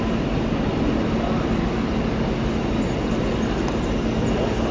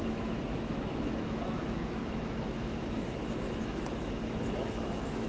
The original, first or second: first